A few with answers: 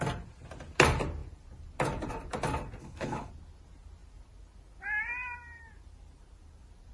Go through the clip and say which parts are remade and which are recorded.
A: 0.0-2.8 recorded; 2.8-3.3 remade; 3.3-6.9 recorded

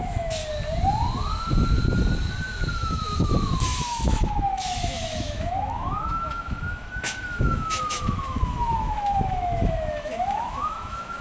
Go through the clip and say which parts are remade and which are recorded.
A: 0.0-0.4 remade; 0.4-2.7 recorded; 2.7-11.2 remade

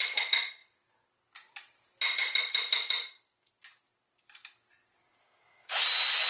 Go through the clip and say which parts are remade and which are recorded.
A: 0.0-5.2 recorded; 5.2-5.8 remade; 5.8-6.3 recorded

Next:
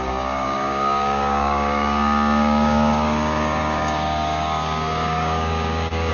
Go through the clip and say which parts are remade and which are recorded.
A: 0.0-6.1 remade

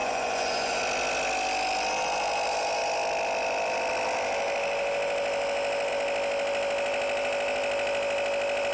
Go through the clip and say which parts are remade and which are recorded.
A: 0.0-0.8 remade; 0.8-8.7 recorded

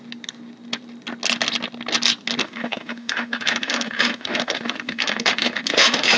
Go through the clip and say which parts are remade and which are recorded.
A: 0.0-2.4 recorded; 2.4-6.2 remade

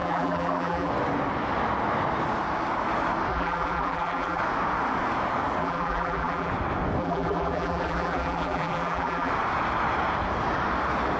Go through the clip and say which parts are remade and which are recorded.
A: 0.0-0.9 remade; 0.9-3.3 recorded; 3.3-4.4 remade; 4.4-5.6 recorded; 5.6-6.5 remade; 6.5-7.0 recorded; 7.0-9.3 remade; 9.3-11.2 recorded